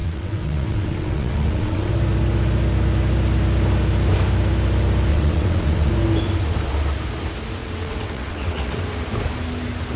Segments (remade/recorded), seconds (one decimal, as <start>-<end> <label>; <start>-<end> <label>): 0.0-1.9 remade; 1.9-5.1 recorded; 5.1-5.9 remade; 5.9-7.6 recorded; 7.6-8.8 remade; 8.8-10.0 recorded